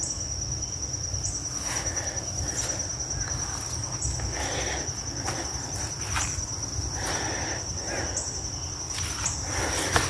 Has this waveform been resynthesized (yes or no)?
no